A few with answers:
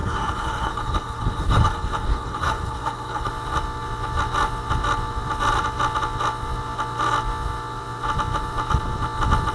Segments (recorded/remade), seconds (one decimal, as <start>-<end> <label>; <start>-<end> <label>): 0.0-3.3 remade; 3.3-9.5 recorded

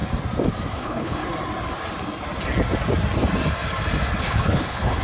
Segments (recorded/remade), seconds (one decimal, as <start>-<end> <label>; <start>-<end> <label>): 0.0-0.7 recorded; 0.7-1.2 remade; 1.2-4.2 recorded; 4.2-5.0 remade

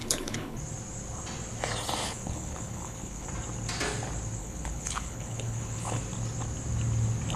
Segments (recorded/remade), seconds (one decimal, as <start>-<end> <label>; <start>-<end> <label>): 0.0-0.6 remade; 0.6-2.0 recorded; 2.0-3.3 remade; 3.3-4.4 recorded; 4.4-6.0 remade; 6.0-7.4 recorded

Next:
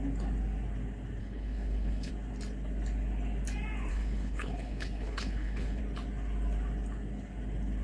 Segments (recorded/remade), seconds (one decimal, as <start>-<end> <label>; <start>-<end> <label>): 0.0-1.2 recorded; 1.2-2.1 remade; 2.1-3.9 recorded; 3.9-5.8 remade; 5.8-7.8 recorded

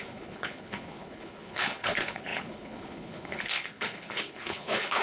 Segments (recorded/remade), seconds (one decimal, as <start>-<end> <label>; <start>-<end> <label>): 0.0-5.0 remade

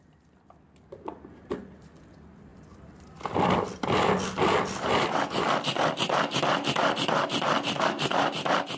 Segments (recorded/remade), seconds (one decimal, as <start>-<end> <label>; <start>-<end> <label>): 0.0-8.8 recorded

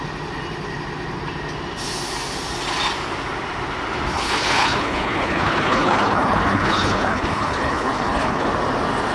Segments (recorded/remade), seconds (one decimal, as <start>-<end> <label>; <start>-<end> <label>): 0.0-4.1 recorded; 4.1-8.5 remade; 8.5-9.1 recorded